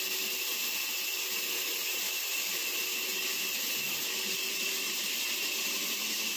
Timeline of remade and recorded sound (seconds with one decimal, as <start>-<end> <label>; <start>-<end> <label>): 0.0-6.4 recorded